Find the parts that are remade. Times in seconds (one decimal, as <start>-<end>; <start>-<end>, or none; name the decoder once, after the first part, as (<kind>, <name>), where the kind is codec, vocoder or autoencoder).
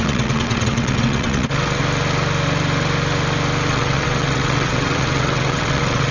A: 0.0-1.8 (vocoder, WaveNeXt); 3.7-6.1